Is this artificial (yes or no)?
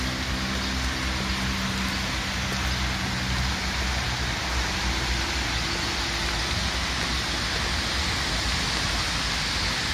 no